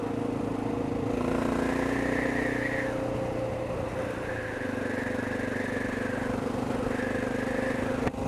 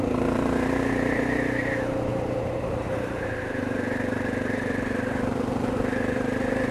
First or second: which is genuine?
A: first